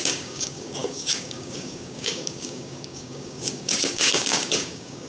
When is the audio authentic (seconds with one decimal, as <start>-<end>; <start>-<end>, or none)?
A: none